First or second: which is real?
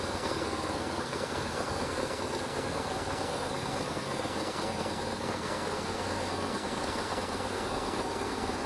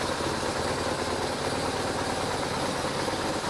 second